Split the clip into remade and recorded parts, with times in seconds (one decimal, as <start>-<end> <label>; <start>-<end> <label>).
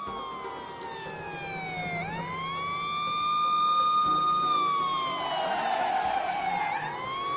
0.0-7.4 recorded